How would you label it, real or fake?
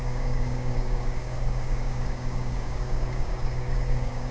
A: fake